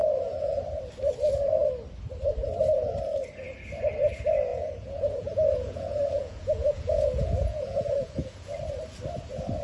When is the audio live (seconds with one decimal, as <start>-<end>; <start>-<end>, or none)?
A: 0.6-4.5; 8.5-9.6

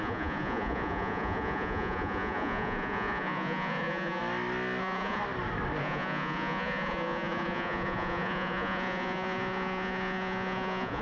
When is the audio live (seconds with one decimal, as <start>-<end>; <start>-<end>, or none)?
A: 4.2-4.8; 5.2-5.8

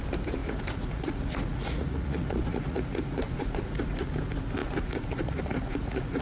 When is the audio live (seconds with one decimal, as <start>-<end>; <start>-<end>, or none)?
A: 0.0-0.4; 4.1-4.6

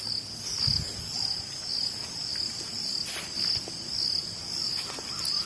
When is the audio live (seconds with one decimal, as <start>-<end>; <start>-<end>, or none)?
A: 0.0-5.5

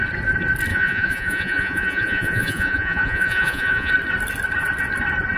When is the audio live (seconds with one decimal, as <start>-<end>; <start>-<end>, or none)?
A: 0.0-0.7; 3.9-5.4

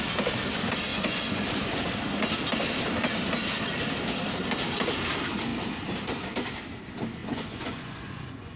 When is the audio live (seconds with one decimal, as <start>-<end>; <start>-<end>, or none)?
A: 0.0-0.9; 1.4-7.2

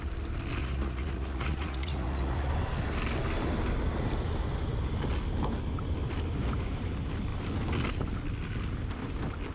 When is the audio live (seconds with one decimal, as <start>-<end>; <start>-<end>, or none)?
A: 0.0-0.6; 2.5-9.5